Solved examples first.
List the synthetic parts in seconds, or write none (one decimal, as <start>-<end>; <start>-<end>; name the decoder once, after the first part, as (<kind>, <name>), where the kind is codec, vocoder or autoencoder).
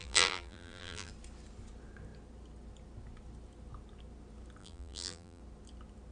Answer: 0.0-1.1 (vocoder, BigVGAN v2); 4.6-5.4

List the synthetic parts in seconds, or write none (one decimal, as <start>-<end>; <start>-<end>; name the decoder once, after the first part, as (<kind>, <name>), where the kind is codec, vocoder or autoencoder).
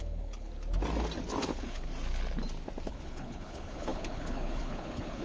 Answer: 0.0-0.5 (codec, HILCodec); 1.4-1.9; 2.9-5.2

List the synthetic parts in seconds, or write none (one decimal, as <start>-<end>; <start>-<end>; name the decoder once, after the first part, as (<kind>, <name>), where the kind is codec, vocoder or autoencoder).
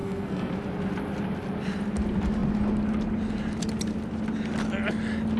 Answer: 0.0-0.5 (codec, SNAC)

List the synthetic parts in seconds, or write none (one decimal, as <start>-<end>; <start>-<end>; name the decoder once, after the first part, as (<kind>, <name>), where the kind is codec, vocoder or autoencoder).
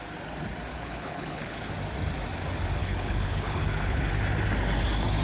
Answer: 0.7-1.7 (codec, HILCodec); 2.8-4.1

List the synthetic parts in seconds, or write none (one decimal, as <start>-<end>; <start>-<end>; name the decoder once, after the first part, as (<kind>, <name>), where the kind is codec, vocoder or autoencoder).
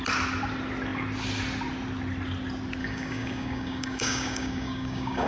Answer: 2.8-5.3 (codec, DAC)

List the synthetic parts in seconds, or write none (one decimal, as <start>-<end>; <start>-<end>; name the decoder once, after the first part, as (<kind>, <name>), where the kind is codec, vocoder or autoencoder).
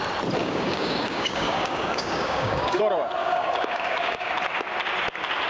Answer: 0.4-2.8 (codec, DAC); 3.2-4.3